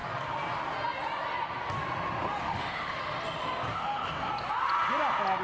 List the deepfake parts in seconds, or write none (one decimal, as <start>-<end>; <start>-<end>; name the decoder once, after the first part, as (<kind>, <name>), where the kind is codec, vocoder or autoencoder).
2.4-3.0 (autoencoder, DAC-VAE); 3.7-4.3